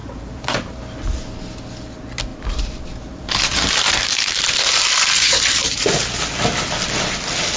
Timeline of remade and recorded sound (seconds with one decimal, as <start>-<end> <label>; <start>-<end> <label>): 0.0-0.8 remade; 0.8-2.3 recorded; 2.3-5.8 remade; 5.8-7.6 recorded